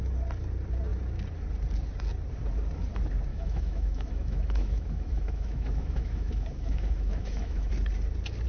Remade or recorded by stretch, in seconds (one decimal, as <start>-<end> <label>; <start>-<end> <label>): 0.0-3.3 recorded; 3.3-7.7 remade; 7.7-8.5 recorded